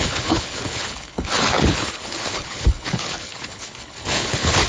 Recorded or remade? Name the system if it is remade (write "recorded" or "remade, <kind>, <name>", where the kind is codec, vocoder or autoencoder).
remade, codec, HILCodec